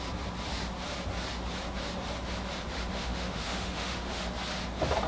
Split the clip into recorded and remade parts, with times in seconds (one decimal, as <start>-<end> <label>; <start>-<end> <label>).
0.0-2.9 recorded; 2.9-4.2 remade; 4.2-5.1 recorded